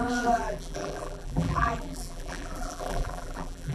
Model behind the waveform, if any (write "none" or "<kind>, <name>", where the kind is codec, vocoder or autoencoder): vocoder, BigVGAN v2